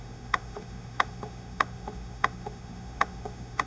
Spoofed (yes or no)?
yes